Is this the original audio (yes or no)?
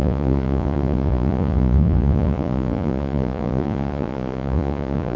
no